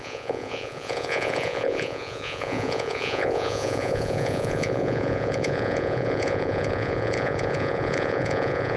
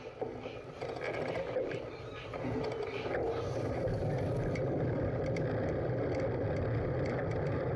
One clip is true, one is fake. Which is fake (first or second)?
first